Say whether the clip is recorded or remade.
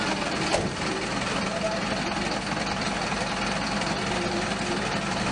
recorded